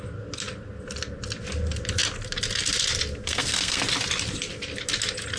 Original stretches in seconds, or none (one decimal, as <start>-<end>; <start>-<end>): 0.0-3.2; 3.8-5.4